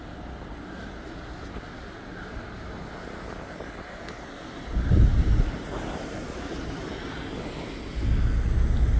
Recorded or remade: recorded